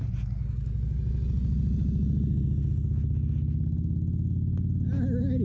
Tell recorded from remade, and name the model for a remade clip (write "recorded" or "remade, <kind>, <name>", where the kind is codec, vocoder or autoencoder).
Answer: recorded